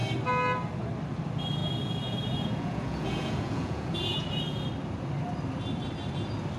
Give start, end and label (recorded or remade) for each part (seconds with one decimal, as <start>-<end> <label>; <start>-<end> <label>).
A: 0.0-1.6 recorded; 1.6-4.6 remade; 4.6-6.6 recorded